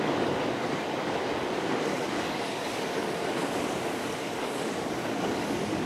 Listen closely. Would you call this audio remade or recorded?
remade